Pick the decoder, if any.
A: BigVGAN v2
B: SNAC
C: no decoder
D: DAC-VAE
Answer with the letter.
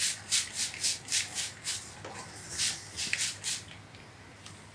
C